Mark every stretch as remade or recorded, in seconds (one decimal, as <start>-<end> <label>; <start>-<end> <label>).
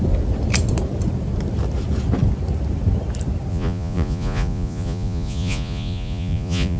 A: 0.0-3.5 recorded; 3.5-6.8 remade